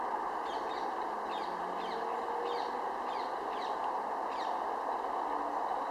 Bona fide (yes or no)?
yes